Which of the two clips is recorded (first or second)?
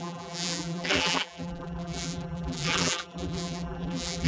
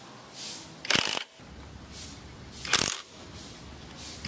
second